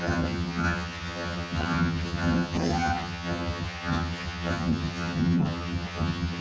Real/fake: fake